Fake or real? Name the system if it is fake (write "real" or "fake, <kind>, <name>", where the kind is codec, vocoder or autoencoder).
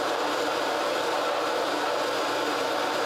real